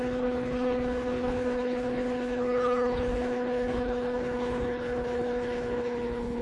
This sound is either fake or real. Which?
fake